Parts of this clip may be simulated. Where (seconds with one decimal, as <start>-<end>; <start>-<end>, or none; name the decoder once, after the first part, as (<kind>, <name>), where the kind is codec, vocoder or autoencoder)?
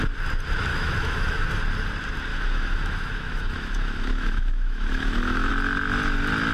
0.7-1.6 (autoencoder, DAC-VAE); 2.3-5.5